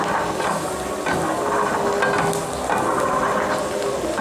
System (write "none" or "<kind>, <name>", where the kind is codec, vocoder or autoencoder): none